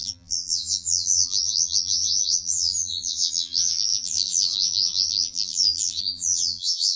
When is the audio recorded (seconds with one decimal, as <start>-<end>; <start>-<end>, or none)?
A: none